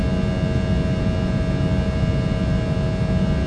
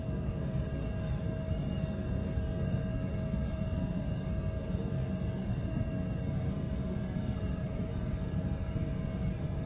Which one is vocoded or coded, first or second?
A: second